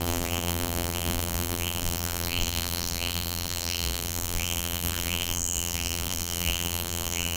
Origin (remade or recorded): remade